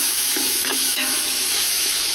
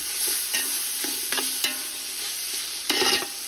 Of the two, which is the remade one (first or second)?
first